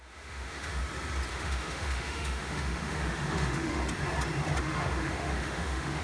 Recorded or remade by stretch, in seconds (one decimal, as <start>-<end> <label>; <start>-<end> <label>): 0.0-0.8 remade; 0.8-1.3 recorded; 1.3-3.8 remade; 3.8-4.6 recorded; 4.6-6.0 remade